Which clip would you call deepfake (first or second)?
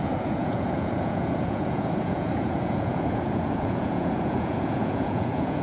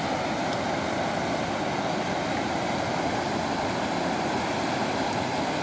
first